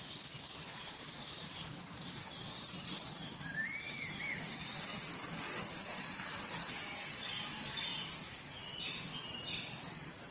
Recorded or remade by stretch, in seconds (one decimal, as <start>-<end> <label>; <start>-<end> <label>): 0.0-0.7 recorded; 0.7-1.7 remade; 1.7-10.3 recorded